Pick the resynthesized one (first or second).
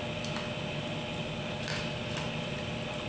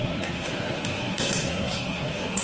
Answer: second